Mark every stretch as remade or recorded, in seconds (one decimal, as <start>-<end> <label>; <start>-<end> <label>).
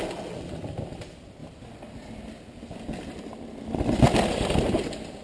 0.0-5.2 recorded